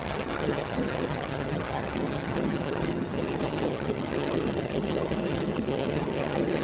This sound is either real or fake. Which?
fake